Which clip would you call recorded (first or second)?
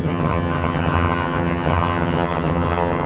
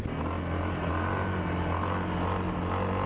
second